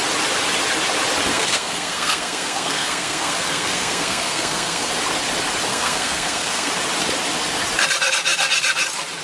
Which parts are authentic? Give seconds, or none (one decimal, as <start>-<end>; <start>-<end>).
0.0-1.3; 4.9-5.7; 6.7-9.2